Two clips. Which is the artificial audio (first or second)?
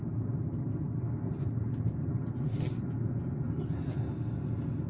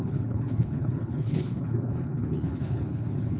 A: second